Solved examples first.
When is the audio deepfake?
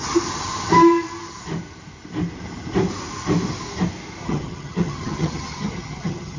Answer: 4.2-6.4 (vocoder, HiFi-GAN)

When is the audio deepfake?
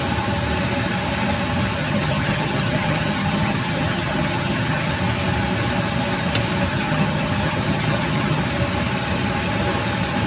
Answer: 1.8-4.9 (vocoder, HiFi-GAN); 6.7-8.4